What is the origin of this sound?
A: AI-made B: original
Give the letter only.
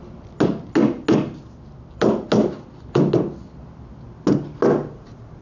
B